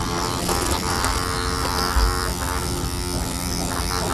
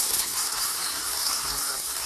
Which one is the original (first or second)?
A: first